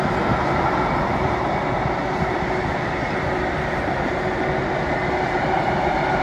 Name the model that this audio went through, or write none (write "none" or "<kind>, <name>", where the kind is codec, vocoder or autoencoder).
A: none